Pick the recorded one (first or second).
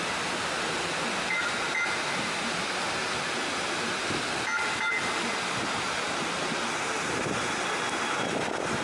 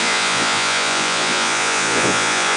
first